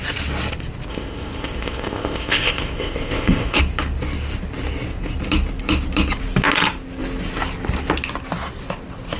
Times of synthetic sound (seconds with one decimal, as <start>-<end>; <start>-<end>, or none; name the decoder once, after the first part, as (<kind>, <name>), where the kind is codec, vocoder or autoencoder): 0.9-3.6 (codec, ZipCodec)